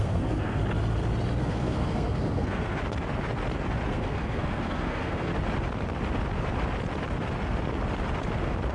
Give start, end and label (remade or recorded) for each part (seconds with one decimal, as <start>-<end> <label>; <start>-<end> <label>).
0.0-0.6 remade; 0.6-1.4 recorded; 1.4-2.8 remade; 2.8-3.9 recorded; 3.9-5.3 remade; 5.3-8.7 recorded